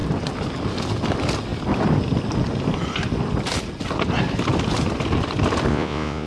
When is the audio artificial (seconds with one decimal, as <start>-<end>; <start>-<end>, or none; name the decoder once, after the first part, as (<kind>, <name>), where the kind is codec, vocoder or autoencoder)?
5.7-6.3 (vocoder, Vocos)